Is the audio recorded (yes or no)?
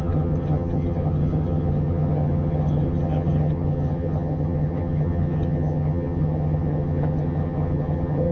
no